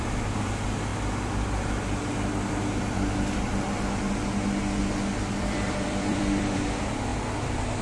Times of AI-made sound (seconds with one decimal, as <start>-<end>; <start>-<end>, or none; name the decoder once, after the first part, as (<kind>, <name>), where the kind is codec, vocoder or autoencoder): 0.0-0.9 (vocoder, BigVGAN v2); 5.3-7.1